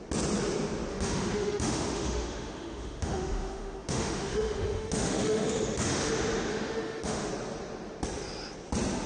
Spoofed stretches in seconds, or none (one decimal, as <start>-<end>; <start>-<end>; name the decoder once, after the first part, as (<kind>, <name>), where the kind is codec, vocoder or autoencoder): 0.9-6.1 (autoencoder, DAC-VAE); 6.5-7.3